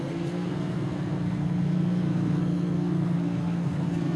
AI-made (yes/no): yes